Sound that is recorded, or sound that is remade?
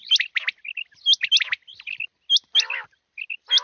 recorded